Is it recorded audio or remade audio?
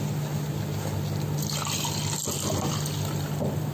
recorded